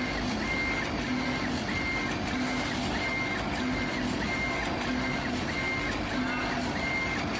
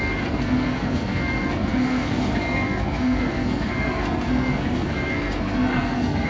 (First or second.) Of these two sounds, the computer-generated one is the second